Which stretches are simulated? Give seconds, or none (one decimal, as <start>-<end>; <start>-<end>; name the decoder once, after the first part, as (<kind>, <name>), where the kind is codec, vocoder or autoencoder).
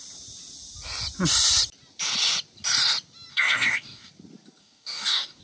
3.3-4.1 (codec, DAC); 4.6-5.4